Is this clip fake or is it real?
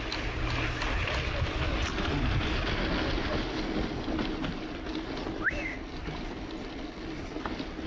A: real